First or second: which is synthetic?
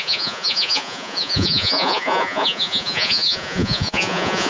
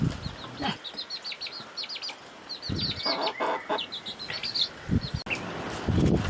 first